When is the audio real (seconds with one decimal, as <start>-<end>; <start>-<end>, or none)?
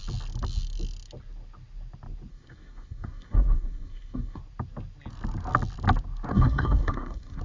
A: 0.0-2.3; 4.4-6.3